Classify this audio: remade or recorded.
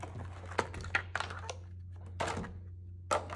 recorded